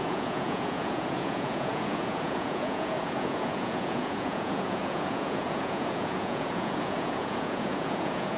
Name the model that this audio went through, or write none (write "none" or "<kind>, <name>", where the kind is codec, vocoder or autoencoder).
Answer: vocoder, Vocos